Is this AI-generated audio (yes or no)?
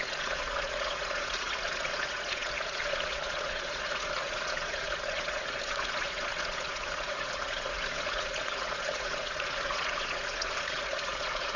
yes